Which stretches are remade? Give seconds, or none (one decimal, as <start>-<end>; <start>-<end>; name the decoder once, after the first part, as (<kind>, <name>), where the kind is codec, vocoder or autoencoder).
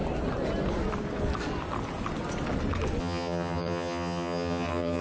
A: 3.0-5.0 (vocoder, HiFi-GAN)